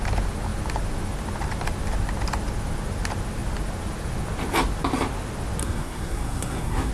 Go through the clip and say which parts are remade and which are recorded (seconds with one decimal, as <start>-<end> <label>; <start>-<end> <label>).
0.0-5.6 recorded; 5.6-6.9 remade